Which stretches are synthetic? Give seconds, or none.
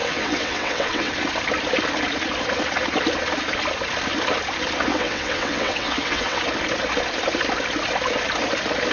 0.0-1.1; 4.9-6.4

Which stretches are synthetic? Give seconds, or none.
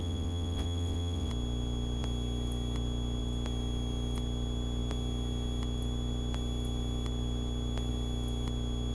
0.0-1.3